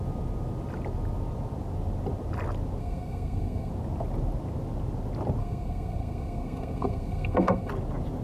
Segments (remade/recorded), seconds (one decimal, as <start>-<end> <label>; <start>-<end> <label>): 0.0-2.8 recorded; 2.8-3.7 remade; 3.7-5.4 recorded; 5.4-7.7 remade; 7.7-8.2 recorded